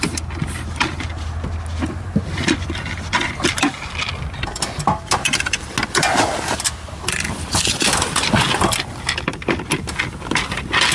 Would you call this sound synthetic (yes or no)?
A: no